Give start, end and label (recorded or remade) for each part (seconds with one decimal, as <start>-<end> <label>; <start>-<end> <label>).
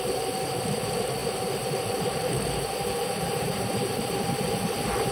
0.0-5.1 remade